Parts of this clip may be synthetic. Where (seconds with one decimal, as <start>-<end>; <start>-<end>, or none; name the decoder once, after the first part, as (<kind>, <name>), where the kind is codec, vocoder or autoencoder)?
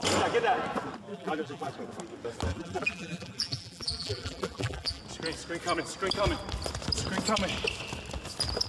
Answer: 1.1-1.7 (vocoder, BigVGAN v2); 2.5-5.0